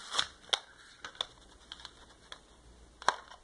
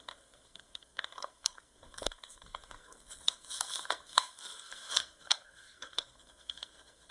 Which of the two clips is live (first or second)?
first